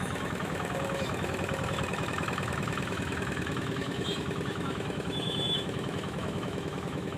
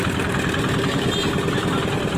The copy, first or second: first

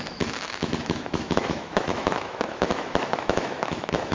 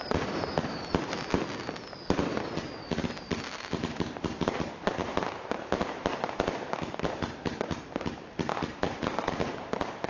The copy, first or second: first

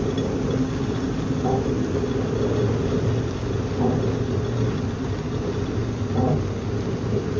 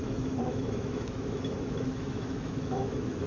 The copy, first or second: second